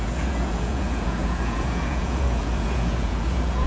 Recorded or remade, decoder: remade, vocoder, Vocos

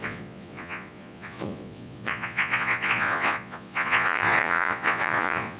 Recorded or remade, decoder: remade, vocoder, Vocos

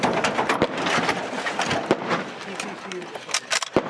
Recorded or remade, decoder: recorded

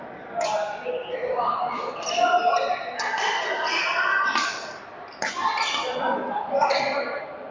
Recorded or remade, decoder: recorded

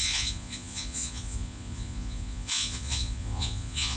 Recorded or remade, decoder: remade, vocoder, Vocos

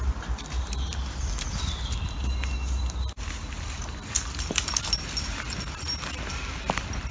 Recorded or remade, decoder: recorded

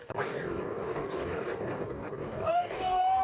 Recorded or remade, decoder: remade, codec, DAC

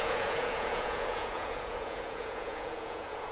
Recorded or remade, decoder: remade, vocoder, Vocos